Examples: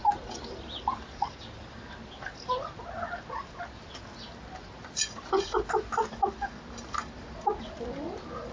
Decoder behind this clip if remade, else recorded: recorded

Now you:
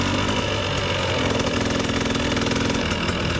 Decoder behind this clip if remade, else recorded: recorded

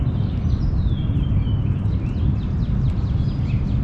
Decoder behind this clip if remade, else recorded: recorded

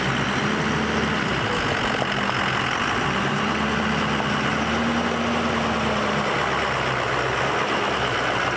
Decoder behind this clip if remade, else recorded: recorded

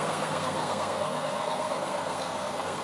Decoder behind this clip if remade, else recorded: remade, codec, SNAC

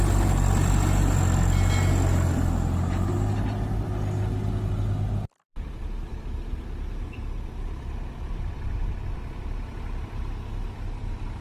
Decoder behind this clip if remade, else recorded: recorded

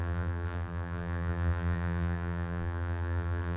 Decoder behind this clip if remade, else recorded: remade, vocoder, BigVGAN v2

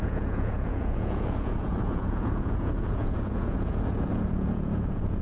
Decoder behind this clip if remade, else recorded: remade, vocoder, Vocos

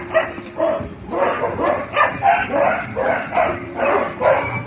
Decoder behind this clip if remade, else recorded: remade, vocoder, BigVGAN v2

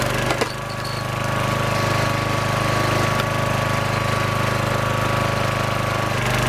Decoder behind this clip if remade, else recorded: recorded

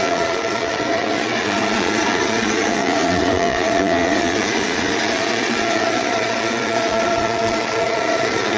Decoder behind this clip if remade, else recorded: remade, vocoder, Vocos